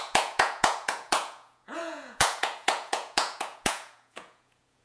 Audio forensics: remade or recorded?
remade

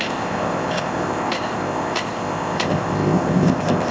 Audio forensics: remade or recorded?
remade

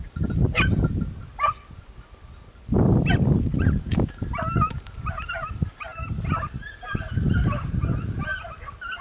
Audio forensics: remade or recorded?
recorded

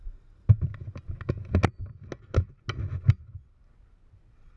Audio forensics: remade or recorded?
recorded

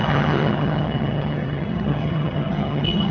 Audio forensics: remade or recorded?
remade